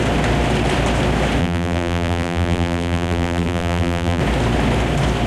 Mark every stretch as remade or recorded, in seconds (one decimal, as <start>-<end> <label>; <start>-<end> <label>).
0.0-1.4 recorded; 1.4-4.2 remade; 4.2-5.3 recorded